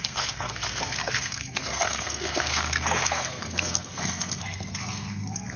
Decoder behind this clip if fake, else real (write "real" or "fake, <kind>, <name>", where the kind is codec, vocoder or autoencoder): fake, codec, SNAC